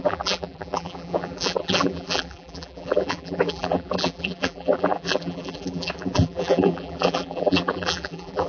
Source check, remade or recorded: remade